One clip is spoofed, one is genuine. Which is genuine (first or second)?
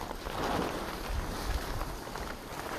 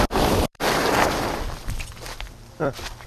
first